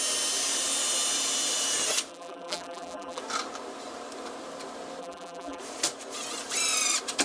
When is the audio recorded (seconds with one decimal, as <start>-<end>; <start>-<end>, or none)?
0.0-2.1; 3.2-5.0; 5.6-7.2